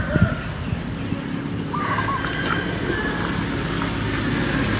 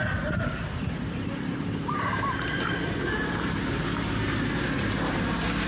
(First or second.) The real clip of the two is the first